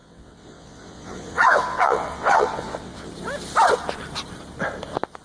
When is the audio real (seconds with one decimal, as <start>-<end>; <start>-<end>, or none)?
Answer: 3.1-5.2